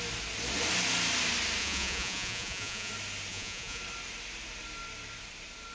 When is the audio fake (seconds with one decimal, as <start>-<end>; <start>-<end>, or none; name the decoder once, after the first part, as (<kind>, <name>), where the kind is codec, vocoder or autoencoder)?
1.6-2.9 (vocoder, Vocos); 3.3-3.8